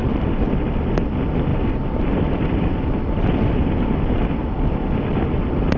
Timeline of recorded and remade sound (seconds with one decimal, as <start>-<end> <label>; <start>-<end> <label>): 0.0-0.8 remade; 0.8-1.5 recorded; 1.5-5.0 remade; 5.0-5.8 recorded